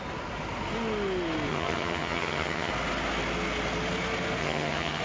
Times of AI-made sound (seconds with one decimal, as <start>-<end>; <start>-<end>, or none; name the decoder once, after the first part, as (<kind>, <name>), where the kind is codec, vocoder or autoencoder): 1.5-2.7 (vocoder, HiFi-GAN); 4.4-5.0